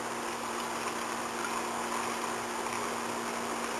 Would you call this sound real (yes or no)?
yes